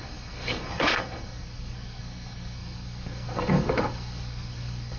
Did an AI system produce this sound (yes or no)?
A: yes